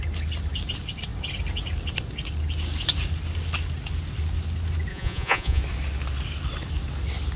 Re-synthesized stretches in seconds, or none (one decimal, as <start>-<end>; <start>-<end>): 4.9-5.6